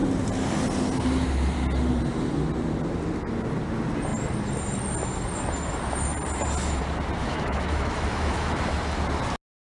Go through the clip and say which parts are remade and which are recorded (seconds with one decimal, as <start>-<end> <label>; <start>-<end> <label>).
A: 0.0-7.2 recorded; 7.2-8.6 remade; 8.6-9.7 recorded